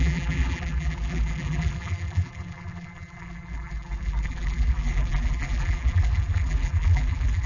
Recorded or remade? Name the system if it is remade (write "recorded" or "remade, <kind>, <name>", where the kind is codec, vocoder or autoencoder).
remade, vocoder, BigVGAN v2